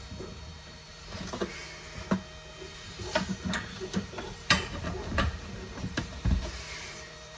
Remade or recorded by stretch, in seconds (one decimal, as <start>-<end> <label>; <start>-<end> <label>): 0.0-0.5 recorded; 0.5-1.3 remade; 1.3-2.7 recorded; 2.7-7.4 remade